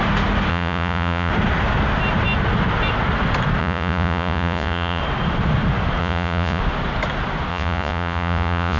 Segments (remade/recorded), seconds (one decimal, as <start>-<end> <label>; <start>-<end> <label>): 0.0-0.5 recorded; 0.5-1.3 remade; 1.3-3.6 recorded; 3.6-5.0 remade; 5.0-6.0 recorded; 6.0-6.6 remade; 6.6-7.5 recorded; 7.5-8.8 remade